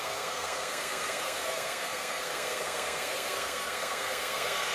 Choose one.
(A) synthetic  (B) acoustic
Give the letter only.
A